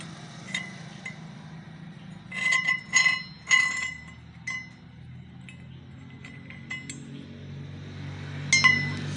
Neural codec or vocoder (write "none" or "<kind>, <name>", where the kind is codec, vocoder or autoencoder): none